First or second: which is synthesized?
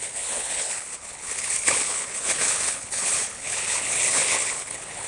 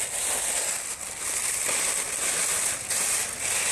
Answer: first